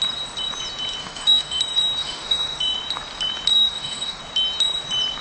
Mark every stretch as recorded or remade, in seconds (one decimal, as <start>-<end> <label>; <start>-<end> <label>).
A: 0.0-1.0 recorded; 1.0-1.6 remade; 1.6-2.0 recorded; 2.0-2.6 remade; 2.6-3.5 recorded; 3.5-4.2 remade; 4.2-5.2 recorded